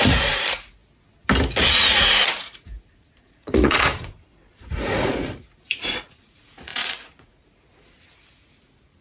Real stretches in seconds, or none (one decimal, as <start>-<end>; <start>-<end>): 0.8-1.6